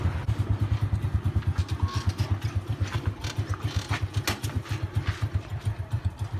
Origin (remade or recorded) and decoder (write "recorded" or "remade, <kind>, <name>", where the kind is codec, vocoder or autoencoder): recorded